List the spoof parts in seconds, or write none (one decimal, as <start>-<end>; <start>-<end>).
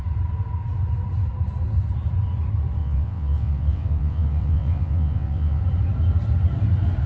2.8-5.6